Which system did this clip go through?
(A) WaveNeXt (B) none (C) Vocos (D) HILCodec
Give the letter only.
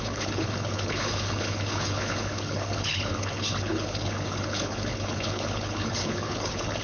D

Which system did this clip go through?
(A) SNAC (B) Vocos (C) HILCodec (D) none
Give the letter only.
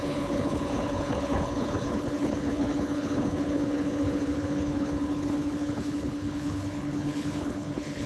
C